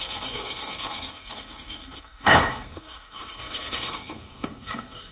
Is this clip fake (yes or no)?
yes